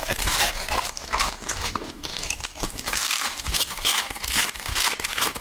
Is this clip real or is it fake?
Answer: fake